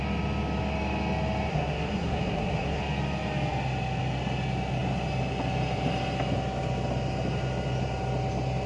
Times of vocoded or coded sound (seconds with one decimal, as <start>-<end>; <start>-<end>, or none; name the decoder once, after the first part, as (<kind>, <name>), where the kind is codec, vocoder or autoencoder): 1.5-2.8 (codec, SNAC)